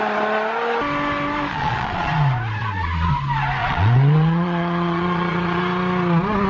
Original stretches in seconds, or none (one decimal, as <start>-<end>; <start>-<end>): 0.0-1.5; 2.1-2.6; 3.1-3.6; 5.6-6.5